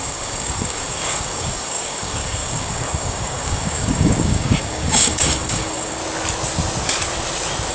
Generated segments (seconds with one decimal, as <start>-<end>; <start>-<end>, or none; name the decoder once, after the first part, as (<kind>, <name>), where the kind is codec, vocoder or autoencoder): 0.0-6.0 (codec, DAC)